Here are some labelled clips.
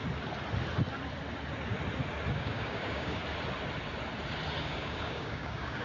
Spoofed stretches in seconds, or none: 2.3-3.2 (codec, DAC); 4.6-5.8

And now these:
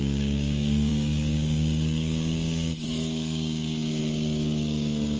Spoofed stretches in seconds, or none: 0.0-5.2 (codec, DAC)

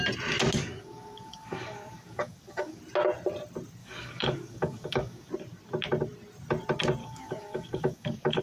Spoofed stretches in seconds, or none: 0.6-2.8 (codec, DAC); 3.8-5.3; 7.0-8.4

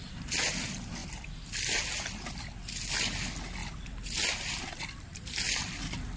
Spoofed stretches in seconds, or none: none

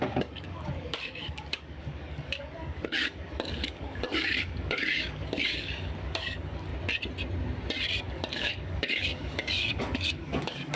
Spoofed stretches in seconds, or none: 0.0-6.7 (codec, DAC); 8.0-10.8

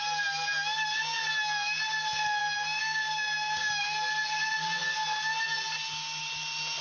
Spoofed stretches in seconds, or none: 2.4-3.8 (codec, DAC)